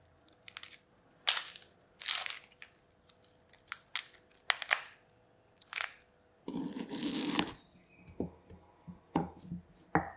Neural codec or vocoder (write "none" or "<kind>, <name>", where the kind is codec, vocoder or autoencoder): none